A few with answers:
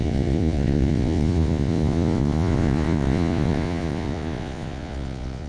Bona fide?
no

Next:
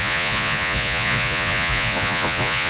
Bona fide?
no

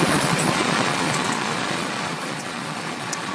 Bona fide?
no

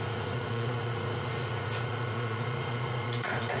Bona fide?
no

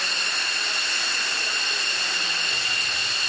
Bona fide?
yes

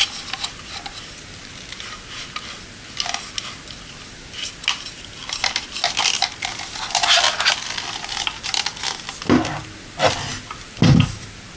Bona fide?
yes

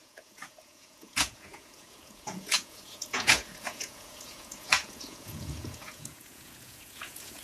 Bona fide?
no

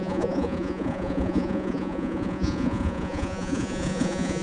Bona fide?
no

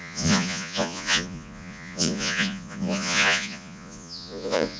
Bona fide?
no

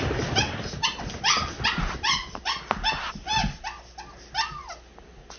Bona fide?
yes